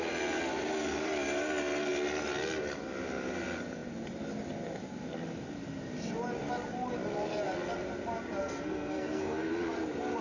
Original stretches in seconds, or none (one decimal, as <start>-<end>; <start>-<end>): 0.0-8.4; 9.5-10.2